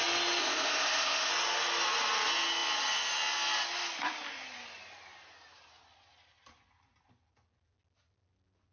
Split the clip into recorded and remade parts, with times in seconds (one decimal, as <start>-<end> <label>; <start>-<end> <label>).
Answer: 0.0-0.4 recorded; 0.4-1.3 remade; 1.3-8.7 recorded